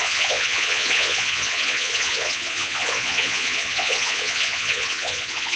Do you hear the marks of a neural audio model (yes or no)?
yes